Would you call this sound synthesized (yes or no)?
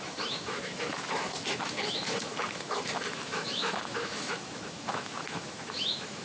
yes